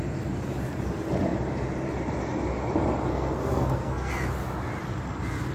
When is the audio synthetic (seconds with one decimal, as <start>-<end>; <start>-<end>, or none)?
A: 3.1-4.1